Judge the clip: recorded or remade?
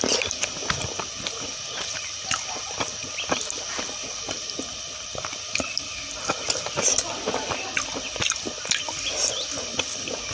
recorded